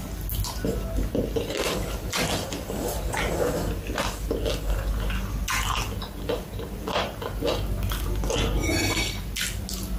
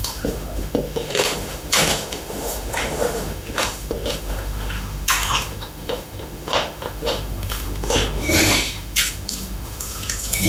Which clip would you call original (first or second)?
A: first